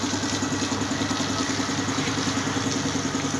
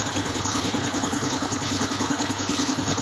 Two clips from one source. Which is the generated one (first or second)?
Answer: second